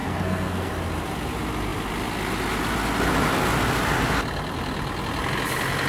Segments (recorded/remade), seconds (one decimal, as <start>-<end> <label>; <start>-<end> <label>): 0.0-0.7 remade; 0.7-5.9 recorded